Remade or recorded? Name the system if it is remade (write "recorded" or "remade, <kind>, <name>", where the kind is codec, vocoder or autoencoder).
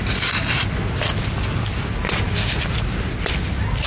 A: recorded